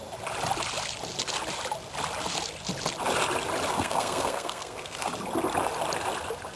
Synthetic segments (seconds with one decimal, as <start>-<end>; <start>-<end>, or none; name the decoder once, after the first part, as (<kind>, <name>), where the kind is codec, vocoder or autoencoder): 3.7-5.1 (codec, SNAC)

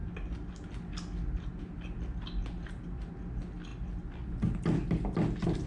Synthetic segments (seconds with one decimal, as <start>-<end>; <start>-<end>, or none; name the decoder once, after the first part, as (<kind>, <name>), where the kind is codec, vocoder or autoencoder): none

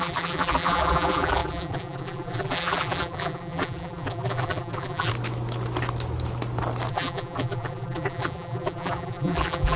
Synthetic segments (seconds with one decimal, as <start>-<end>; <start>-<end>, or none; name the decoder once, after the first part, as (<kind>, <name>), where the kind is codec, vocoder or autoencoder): 0.0-5.1 (vocoder, BigVGAN v2); 6.9-9.8

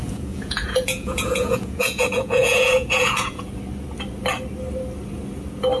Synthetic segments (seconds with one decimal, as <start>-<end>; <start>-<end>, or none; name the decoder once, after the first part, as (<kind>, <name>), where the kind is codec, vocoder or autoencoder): 0.0-3.5 (vocoder, Vocos)

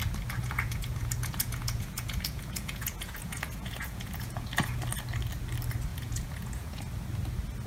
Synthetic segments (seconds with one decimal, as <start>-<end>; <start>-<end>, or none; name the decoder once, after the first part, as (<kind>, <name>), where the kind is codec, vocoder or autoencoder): 0.4-4.8 (vocoder, Vocos); 5.9-6.8